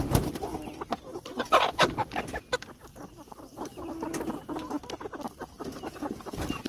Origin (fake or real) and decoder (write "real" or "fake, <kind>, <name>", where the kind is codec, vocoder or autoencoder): real